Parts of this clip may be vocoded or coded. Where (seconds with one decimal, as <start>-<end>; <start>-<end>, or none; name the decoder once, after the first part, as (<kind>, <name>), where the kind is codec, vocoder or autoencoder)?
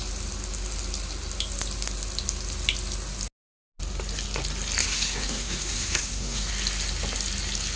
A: 4.8-6.5 (codec, SNAC)